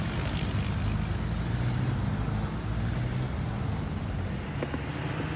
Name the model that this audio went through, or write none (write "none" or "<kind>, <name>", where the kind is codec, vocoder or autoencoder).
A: none